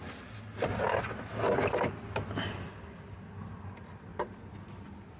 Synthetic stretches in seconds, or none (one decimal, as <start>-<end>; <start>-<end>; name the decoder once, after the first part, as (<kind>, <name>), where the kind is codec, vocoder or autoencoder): none